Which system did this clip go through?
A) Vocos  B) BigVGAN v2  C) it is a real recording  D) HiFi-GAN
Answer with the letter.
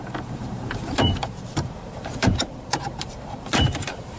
B